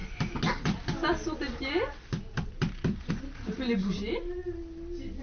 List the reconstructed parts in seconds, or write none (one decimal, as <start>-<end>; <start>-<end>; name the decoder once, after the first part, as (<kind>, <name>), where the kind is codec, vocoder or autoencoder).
none